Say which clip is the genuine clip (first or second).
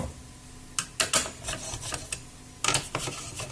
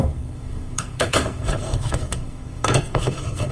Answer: first